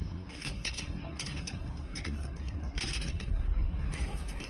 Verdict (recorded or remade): remade